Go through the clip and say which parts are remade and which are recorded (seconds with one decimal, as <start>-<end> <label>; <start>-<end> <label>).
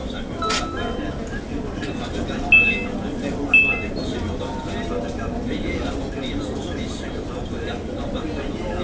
0.0-0.6 remade; 0.6-8.8 recorded